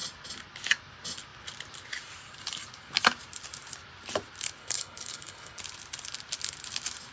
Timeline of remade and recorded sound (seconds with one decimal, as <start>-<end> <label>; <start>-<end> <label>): 0.0-4.6 recorded; 4.6-5.6 remade; 5.6-7.1 recorded